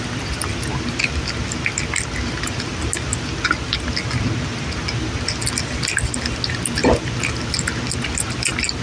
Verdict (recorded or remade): recorded